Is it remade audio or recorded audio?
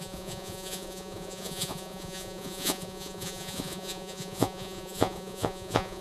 remade